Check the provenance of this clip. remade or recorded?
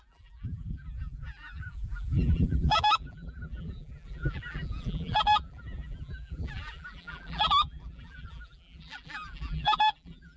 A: remade